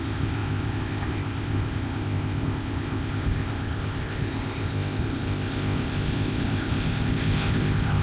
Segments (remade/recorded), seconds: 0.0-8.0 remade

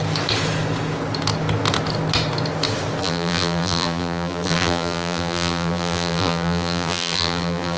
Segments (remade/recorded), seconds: 0.0-3.0 recorded; 3.0-7.8 remade

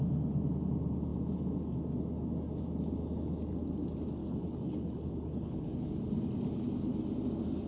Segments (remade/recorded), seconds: 0.0-4.2 recorded; 4.2-5.7 remade; 5.7-7.7 recorded

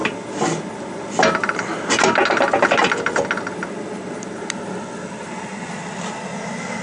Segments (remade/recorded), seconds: 0.0-6.8 recorded

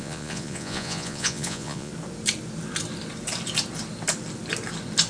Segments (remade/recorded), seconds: 0.0-1.9 remade; 1.9-5.1 recorded

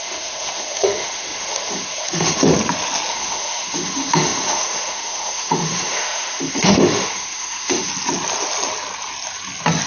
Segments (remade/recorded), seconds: 0.0-2.5 remade; 2.5-3.1 recorded; 3.1-7.9 remade; 7.9-9.9 recorded